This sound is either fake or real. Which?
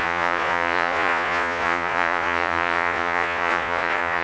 fake